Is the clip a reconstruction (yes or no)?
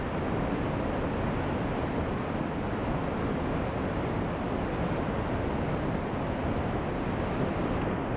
no